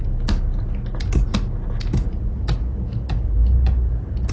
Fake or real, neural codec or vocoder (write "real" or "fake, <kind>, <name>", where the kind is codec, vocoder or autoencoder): real